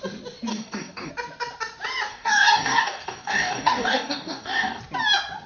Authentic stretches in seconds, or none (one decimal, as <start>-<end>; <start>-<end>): 0.0-0.5; 1.1-2.1; 4.8-5.5